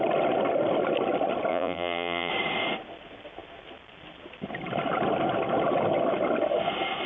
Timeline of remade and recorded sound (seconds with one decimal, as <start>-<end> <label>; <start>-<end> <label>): 0.0-1.5 recorded; 1.5-2.3 remade; 2.3-7.1 recorded